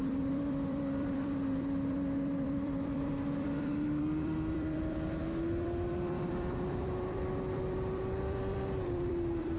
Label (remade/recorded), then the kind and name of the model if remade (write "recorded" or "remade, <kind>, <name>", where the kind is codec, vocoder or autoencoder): remade, vocoder, BigVGAN v2